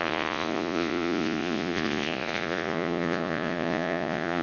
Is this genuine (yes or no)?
no